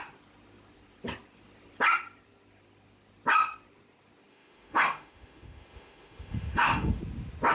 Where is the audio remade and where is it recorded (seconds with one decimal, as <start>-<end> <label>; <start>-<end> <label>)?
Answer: 0.0-4.3 recorded; 4.3-7.0 remade; 7.0-7.5 recorded